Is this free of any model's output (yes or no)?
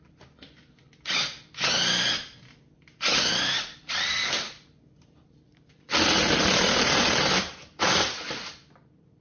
no